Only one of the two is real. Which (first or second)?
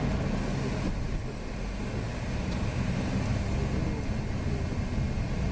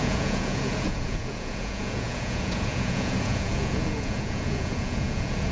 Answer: first